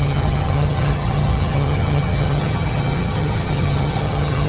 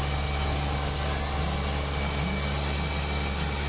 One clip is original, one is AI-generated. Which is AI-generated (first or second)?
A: first